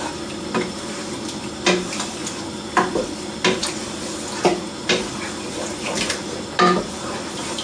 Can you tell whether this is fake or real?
real